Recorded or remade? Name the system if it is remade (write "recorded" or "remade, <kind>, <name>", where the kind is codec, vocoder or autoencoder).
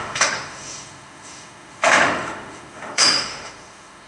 remade, autoencoder, DAC-VAE